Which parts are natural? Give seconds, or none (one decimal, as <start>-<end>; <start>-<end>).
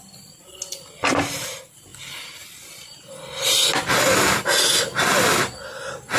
0.0-6.2